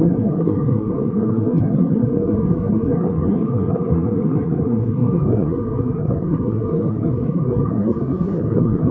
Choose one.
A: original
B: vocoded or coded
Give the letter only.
B